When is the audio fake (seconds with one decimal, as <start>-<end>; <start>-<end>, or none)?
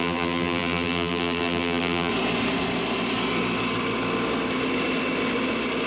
0.0-2.1